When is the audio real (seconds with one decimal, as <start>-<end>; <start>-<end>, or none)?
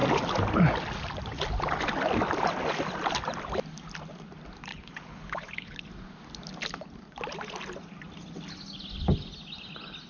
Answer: 0.0-4.7; 5.8-10.1